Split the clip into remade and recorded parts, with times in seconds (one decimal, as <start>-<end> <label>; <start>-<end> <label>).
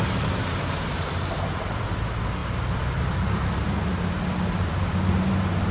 0.0-5.7 recorded